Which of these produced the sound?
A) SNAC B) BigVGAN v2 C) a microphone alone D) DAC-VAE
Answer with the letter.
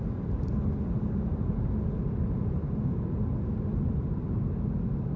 C